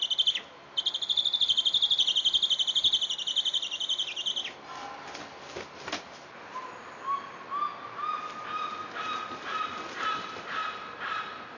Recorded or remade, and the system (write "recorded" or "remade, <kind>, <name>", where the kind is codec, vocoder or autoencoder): recorded